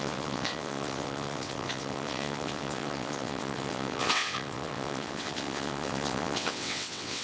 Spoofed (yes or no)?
yes